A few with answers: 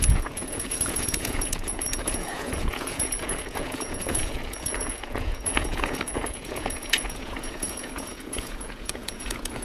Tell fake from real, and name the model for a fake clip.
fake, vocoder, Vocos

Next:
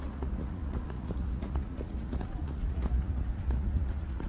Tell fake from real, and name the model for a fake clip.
fake, vocoder, Vocos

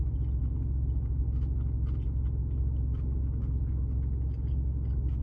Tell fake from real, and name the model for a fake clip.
real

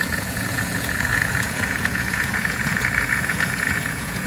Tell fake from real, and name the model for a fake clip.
fake, vocoder, Vocos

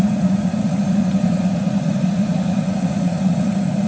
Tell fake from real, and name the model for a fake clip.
fake, vocoder, Vocos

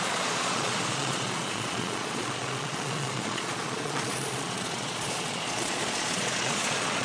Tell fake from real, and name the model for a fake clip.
fake, vocoder, Vocos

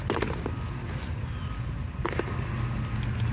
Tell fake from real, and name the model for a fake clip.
real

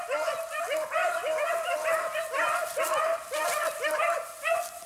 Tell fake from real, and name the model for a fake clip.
real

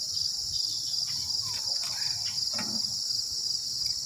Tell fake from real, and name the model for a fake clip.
real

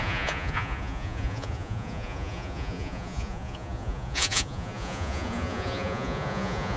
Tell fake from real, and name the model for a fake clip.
fake, vocoder, Vocos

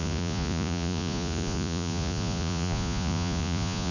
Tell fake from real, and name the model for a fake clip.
fake, vocoder, Vocos